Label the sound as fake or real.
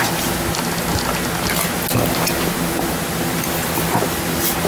real